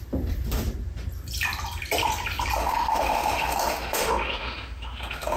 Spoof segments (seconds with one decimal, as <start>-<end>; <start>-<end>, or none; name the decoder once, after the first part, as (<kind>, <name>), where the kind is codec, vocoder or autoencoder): 2.6-5.4 (autoencoder, DAC-VAE)